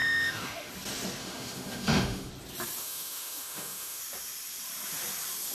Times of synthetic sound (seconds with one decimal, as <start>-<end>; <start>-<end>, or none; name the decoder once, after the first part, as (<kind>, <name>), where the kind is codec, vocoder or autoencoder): 0.0-0.7 (autoencoder, DAC-VAE); 1.2-2.3; 2.8-4.0

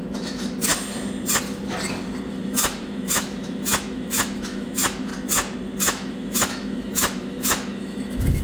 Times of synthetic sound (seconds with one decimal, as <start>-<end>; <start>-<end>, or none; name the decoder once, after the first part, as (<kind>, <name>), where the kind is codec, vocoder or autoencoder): 0.0-0.7 (autoencoder, DAC-VAE); 2.3-5.1; 5.8-8.4

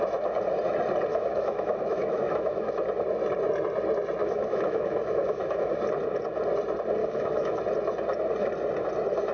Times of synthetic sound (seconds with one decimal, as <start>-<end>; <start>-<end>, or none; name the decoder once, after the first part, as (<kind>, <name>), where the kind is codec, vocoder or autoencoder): 1.1-2.7 (autoencoder, DAC-VAE); 4.2-5.7; 7.0-7.6

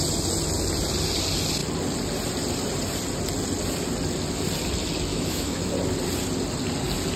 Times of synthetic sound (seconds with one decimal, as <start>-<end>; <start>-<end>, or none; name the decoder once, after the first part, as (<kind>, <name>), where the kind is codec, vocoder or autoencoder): 5.1-5.7 (autoencoder, DAC-VAE)

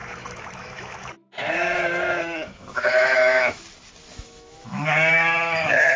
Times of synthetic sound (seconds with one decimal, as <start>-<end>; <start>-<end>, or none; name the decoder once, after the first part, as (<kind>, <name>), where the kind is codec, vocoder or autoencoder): 0.0-3.6 (autoencoder, DAC-VAE); 4.1-6.0

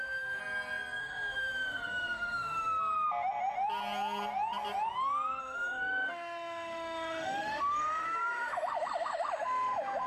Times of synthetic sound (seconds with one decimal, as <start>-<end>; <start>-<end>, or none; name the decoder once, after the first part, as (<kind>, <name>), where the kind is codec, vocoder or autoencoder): 0.0-0.4 (autoencoder, DAC-VAE); 1.0-2.8; 5.4-10.1

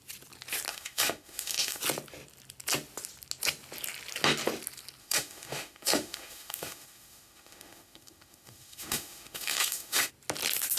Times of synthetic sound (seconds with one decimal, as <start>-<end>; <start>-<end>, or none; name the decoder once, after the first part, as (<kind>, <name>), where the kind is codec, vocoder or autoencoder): 0.7-1.8 (autoencoder, DAC-VAE); 5.0-10.1

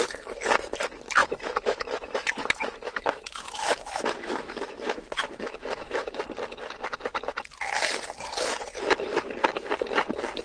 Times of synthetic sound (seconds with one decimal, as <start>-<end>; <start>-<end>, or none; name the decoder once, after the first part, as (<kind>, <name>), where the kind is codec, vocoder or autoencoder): 1.2-6.2 (autoencoder, DAC-VAE)